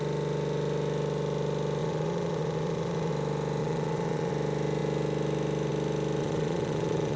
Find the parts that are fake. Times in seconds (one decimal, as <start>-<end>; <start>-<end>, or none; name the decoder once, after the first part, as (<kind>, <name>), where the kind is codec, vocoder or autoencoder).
1.8-3.1 (vocoder, Vocos); 3.6-4.3; 6.2-7.2